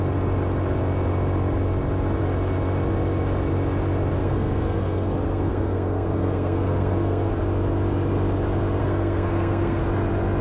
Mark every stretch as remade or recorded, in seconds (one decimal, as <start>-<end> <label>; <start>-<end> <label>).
0.0-4.2 recorded; 4.2-7.4 remade; 7.4-8.8 recorded; 8.8-9.8 remade; 9.8-10.4 recorded